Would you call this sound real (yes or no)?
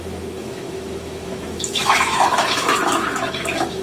no